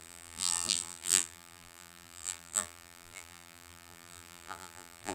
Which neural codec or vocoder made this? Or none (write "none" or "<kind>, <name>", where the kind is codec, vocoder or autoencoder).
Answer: vocoder, BigVGAN v2